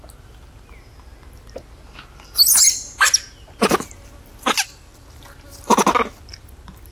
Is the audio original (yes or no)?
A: yes